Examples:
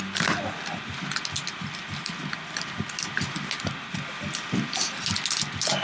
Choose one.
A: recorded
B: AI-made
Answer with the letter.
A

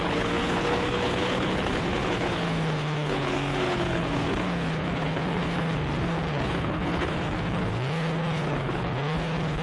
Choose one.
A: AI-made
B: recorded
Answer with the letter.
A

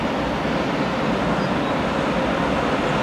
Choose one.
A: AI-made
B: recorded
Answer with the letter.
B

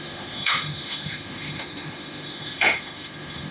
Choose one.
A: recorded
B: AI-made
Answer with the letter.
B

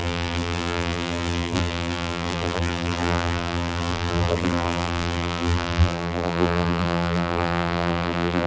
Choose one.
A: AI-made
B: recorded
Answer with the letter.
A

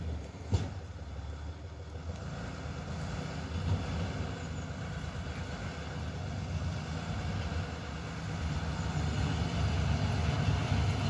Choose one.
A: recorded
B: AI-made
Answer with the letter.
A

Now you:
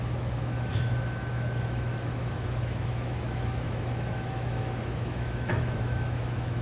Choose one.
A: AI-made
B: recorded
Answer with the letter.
A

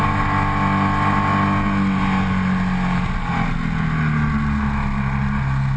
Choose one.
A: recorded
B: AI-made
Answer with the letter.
A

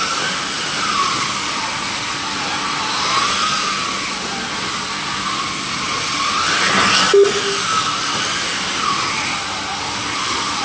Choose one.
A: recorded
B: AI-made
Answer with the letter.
A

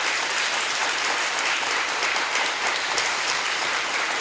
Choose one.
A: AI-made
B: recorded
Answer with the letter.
A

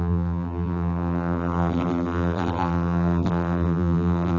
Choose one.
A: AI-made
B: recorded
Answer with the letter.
A